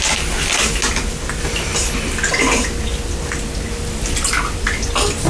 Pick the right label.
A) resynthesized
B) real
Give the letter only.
B